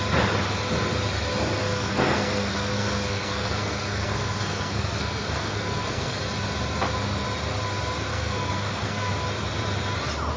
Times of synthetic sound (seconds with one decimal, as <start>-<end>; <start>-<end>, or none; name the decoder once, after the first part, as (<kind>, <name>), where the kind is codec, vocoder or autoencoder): 1.6-6.2 (codec, SNAC); 8.1-9.1